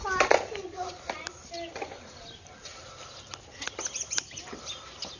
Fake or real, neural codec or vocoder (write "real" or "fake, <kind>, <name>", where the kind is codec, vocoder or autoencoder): real